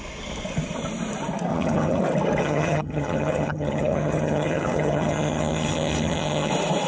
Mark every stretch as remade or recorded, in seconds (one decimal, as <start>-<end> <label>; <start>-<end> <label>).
0.0-1.5 recorded; 1.5-2.0 remade; 2.0-2.4 recorded; 2.4-6.5 remade; 6.5-6.9 recorded